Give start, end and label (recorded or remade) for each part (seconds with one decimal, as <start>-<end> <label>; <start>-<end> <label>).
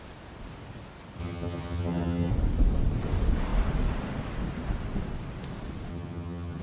0.0-1.2 recorded; 1.2-2.3 remade; 2.3-5.9 recorded; 5.9-6.6 remade